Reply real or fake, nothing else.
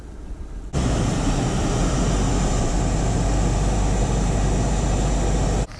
real